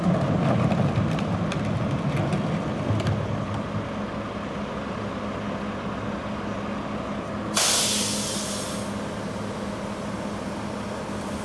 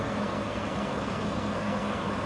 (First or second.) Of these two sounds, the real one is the first